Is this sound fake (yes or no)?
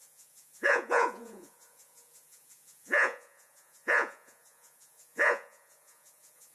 yes